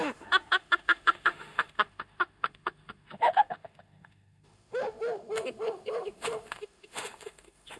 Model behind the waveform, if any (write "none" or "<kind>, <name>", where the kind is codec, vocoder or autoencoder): autoencoder, DAC-VAE